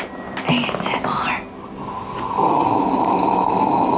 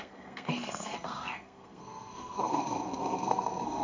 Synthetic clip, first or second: second